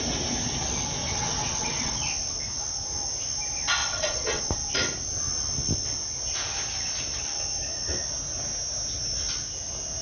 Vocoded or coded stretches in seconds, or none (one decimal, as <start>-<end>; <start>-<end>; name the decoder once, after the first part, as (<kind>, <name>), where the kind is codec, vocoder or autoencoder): 1.1-2.0 (vocoder, WaveNeXt); 3.8-4.4